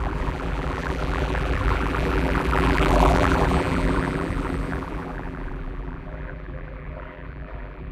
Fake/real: fake